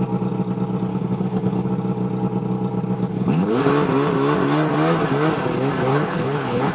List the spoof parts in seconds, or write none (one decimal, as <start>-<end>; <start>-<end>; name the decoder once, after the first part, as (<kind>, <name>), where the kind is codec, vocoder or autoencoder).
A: 0.9-1.7 (codec, HILCodec); 3.1-3.6; 5.9-6.7